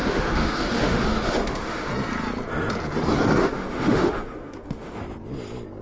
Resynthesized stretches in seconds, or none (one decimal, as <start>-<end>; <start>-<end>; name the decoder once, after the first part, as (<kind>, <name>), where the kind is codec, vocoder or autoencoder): 0.0-1.9 (autoencoder, DAC-VAE); 3.4-5.0